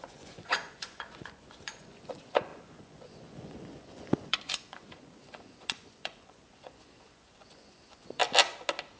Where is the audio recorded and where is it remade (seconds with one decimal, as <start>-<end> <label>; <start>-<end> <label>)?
0.0-8.2 remade; 8.2-9.0 recorded